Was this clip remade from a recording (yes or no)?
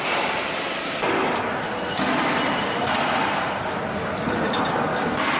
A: no